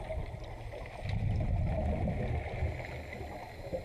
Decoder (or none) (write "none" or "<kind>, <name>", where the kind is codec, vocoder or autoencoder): none